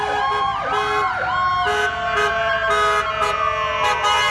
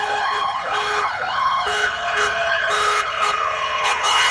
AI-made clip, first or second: second